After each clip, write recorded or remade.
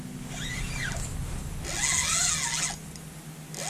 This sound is recorded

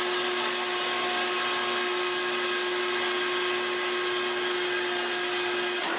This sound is recorded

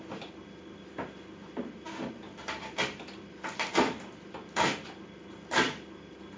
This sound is remade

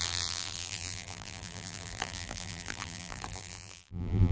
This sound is remade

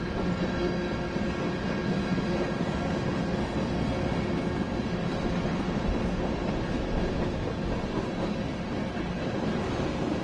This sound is recorded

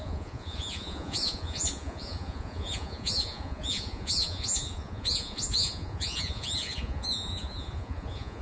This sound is remade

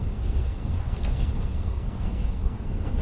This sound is remade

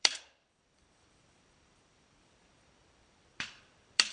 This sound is remade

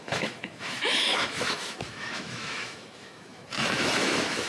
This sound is remade